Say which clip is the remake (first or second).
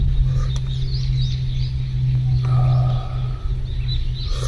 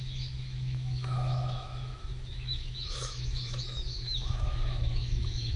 second